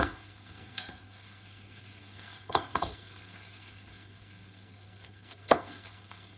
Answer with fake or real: fake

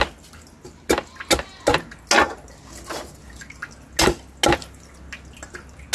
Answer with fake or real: real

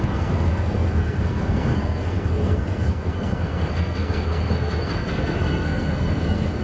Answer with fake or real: fake